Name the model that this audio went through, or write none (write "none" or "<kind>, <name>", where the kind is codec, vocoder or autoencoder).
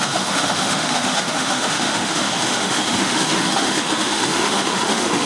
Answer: autoencoder, DAC-VAE